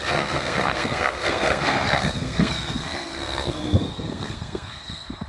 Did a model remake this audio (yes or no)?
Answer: yes